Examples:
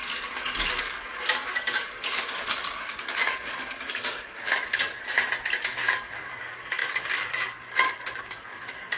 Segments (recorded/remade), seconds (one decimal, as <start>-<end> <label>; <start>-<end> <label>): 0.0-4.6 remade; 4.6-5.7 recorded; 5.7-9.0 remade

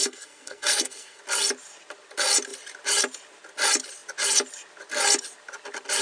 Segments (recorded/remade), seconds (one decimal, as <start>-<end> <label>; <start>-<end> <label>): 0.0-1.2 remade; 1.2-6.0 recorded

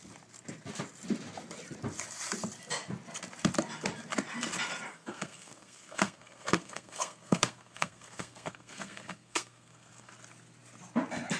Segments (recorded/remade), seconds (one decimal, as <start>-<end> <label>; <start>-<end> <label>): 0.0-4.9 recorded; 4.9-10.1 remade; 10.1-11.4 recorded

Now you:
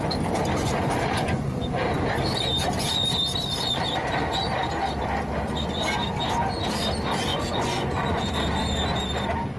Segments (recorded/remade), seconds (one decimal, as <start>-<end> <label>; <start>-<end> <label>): 0.0-0.6 recorded; 0.6-1.7 remade; 1.7-7.3 recorded; 7.3-8.3 remade; 8.3-9.6 recorded